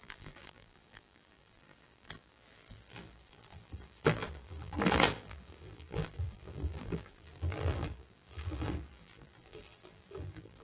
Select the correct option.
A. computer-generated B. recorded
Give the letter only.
A